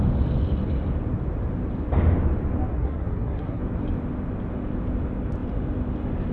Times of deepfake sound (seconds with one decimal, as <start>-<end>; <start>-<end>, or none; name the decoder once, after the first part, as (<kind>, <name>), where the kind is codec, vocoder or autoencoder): 2.7-3.6 (codec, SNAC)